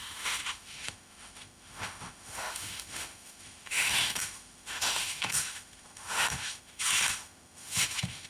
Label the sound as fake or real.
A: fake